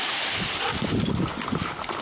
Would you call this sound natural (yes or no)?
yes